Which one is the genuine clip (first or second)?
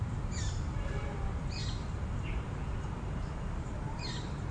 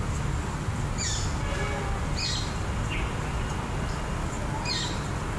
second